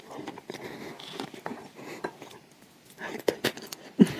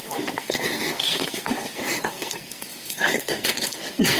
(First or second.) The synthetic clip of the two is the second